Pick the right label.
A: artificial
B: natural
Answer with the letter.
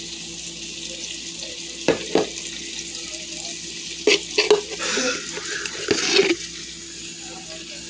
B